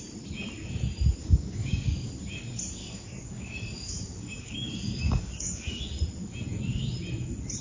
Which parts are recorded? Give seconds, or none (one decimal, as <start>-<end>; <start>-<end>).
0.0-1.2; 2.1-2.8; 5.8-7.6